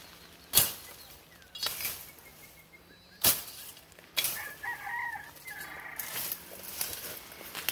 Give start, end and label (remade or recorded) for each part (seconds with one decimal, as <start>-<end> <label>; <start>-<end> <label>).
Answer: 0.0-7.7 recorded